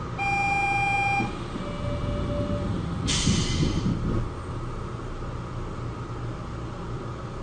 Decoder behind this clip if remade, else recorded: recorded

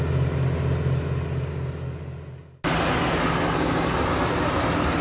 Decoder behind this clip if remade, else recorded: recorded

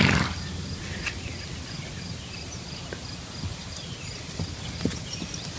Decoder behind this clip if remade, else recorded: recorded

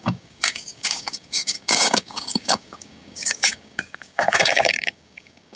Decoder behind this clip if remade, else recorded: remade, codec, DAC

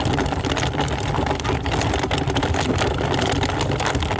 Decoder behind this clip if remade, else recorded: recorded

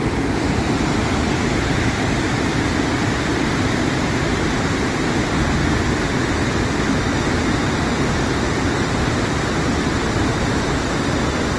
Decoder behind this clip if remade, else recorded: recorded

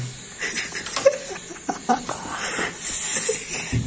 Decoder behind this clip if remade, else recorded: recorded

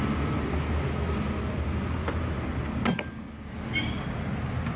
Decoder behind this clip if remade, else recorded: recorded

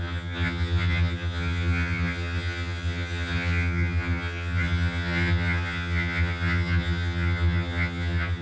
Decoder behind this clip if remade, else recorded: remade, vocoder, HiFi-GAN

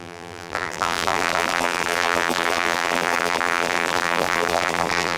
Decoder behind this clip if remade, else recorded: remade, vocoder, BigVGAN v2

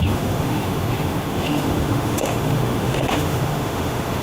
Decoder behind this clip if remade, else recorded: remade, autoencoder, DAC-VAE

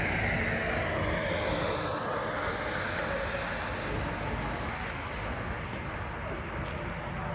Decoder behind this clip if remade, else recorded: recorded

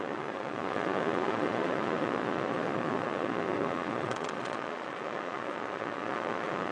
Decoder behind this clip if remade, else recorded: remade, vocoder, Vocos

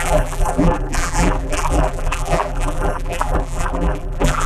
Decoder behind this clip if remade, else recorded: remade, vocoder, BigVGAN v2